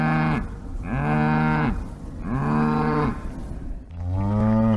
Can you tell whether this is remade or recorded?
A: recorded